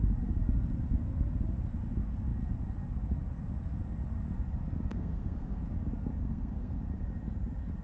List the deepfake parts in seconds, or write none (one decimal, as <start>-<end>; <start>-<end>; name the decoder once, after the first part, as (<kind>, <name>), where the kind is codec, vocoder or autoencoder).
4.9-5.6 (codec, SNAC); 6.2-6.8